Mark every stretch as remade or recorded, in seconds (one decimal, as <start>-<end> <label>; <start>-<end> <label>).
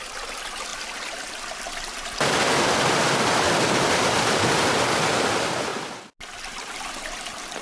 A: 0.0-7.6 recorded